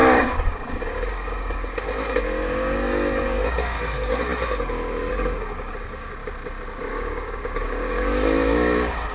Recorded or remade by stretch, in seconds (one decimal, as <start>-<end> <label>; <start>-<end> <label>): 0.0-6.2 remade; 6.2-6.9 recorded; 6.9-9.1 remade